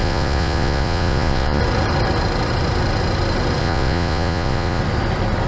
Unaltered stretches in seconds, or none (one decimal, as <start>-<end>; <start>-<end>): 1.6-3.6; 4.8-5.5